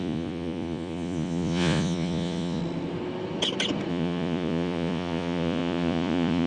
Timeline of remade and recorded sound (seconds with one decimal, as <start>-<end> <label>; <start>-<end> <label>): 0.0-2.6 remade; 2.6-3.9 recorded; 3.9-6.5 remade

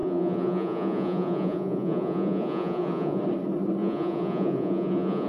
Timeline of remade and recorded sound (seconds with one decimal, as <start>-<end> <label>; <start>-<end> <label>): 0.0-3.2 remade; 3.2-3.8 recorded; 3.8-5.3 remade